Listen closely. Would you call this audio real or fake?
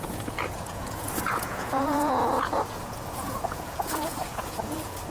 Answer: fake